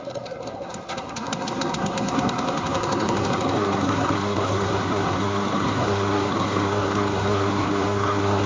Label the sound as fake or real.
fake